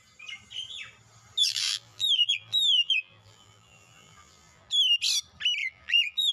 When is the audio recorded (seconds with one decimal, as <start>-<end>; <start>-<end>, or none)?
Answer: 0.0-1.4; 4.7-5.6